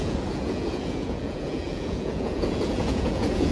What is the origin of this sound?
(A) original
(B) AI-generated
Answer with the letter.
B